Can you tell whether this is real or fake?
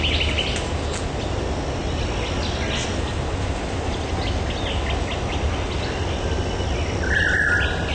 real